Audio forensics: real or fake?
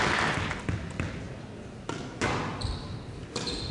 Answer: real